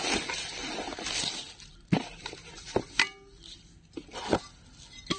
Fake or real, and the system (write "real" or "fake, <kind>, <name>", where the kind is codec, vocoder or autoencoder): real